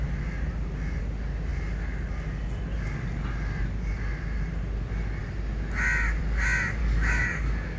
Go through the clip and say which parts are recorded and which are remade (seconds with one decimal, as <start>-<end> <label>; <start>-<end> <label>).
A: 0.0-6.8 recorded; 6.8-7.8 remade